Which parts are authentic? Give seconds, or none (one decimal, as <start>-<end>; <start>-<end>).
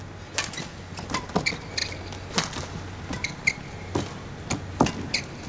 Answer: 0.0-5.5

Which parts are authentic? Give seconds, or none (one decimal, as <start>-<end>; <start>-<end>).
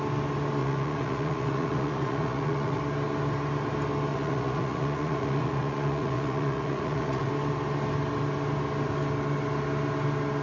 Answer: 0.0-0.6; 2.8-4.1; 7.3-10.4